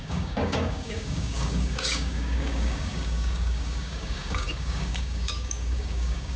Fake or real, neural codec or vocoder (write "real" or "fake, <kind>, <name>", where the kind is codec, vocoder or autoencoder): fake, codec, DAC